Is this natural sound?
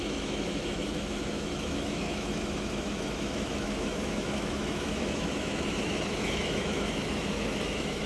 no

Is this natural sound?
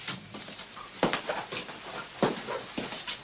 yes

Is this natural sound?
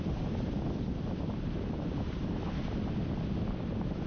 no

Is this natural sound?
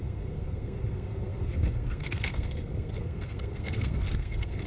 no